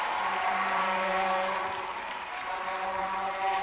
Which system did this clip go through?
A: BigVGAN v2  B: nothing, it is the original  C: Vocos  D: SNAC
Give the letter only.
A